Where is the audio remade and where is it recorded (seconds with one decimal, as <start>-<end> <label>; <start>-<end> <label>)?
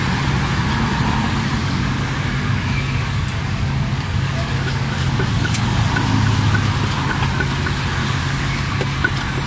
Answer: 0.0-1.6 recorded; 1.6-5.8 remade; 5.8-8.0 recorded; 8.0-8.7 remade; 8.7-9.5 recorded